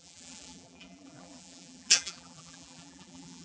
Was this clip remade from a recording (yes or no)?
yes